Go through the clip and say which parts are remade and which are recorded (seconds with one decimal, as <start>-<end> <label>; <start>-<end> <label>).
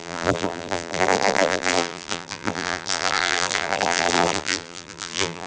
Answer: 0.0-5.5 remade